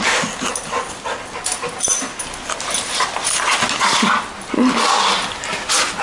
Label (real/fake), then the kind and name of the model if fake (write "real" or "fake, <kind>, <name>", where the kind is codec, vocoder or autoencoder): real